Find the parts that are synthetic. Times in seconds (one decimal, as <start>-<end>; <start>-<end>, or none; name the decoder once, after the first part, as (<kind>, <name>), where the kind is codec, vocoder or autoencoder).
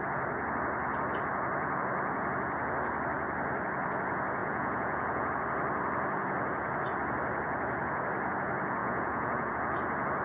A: 4.4-5.3 (vocoder, Vocos); 8.8-9.5